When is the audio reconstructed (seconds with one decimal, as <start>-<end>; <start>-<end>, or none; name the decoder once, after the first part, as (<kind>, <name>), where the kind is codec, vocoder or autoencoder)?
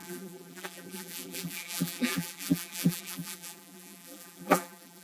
0.0-5.0 (vocoder, BigVGAN v2)